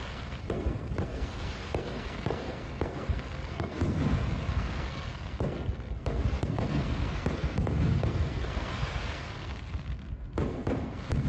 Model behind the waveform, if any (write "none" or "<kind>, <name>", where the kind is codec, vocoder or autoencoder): codec, SNAC